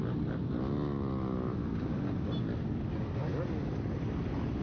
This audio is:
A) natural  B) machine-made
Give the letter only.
A